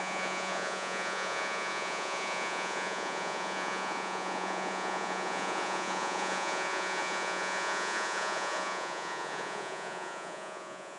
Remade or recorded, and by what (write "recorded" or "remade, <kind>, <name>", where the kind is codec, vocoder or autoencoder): remade, vocoder, Vocos